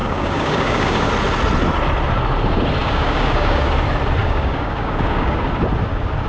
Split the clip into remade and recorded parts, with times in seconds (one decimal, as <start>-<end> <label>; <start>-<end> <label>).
0.0-1.1 remade; 1.1-2.8 recorded; 2.8-3.7 remade; 3.7-4.2 recorded; 4.2-5.3 remade; 5.3-6.3 recorded